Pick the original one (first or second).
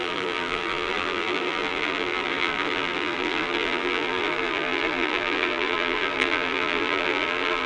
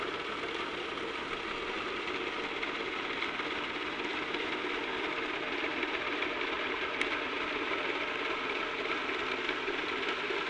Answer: second